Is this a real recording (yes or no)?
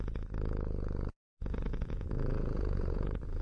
no